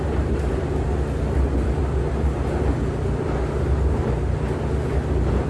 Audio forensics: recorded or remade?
recorded